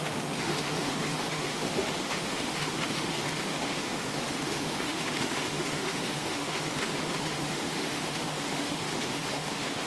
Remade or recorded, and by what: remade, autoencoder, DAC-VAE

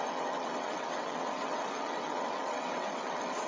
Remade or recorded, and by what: remade, vocoder, WaveNeXt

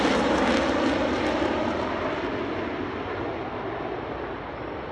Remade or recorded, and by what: recorded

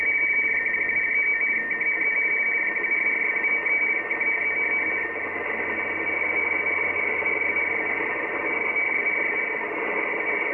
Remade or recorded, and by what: recorded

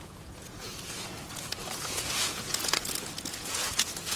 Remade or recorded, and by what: remade, vocoder, Vocos